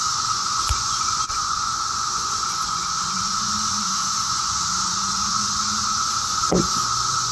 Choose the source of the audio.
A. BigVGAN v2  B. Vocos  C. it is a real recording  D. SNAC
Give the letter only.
B